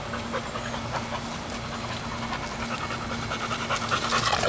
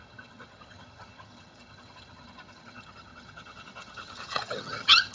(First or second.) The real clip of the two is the first